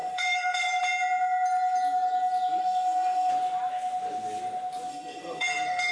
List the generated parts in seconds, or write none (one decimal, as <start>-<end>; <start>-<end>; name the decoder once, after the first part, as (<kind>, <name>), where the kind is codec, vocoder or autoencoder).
0.0-0.8 (codec, SNAC); 2.6-3.3; 4.9-5.9